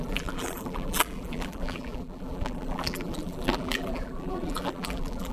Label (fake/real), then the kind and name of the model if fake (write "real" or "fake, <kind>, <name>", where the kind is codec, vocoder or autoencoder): fake, vocoder, BigVGAN v2